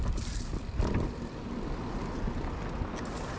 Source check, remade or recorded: recorded